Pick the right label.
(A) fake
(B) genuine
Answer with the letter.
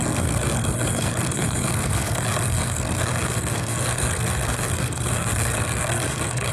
A